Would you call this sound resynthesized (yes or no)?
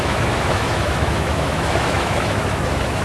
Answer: yes